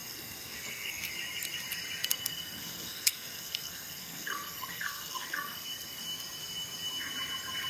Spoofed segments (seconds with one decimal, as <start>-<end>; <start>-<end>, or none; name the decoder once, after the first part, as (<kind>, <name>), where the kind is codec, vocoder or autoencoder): 0.0-1.1 (codec, SNAC); 2.0-6.0